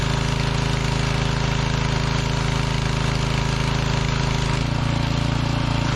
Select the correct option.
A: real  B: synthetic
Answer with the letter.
A